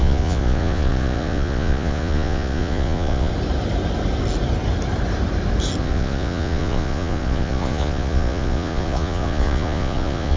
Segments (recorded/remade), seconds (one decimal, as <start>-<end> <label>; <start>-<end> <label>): 0.0-3.3 remade; 3.3-5.8 recorded; 5.8-10.4 remade